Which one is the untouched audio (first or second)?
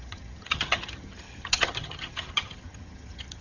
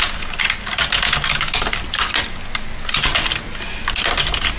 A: second